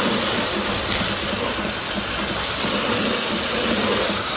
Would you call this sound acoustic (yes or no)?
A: yes